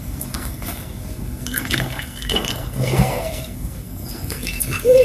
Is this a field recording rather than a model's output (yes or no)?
no